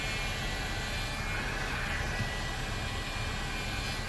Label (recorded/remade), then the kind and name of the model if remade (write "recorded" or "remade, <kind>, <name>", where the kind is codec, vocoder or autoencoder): recorded